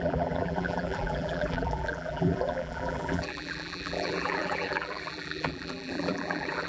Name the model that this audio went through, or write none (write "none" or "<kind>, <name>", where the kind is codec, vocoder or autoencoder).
vocoder, BigVGAN v2